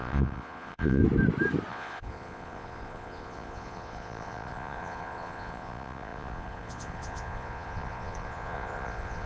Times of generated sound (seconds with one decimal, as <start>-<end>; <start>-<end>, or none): 0.0-1.0; 1.7-9.3